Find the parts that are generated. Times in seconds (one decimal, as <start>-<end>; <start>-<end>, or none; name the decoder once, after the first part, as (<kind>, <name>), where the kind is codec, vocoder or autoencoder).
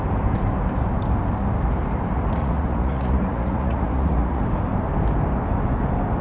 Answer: 2.4-4.4 (vocoder, Vocos)